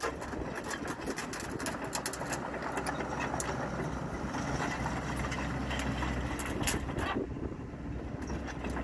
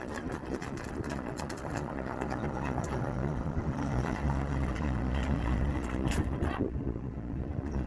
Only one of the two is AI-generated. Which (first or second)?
second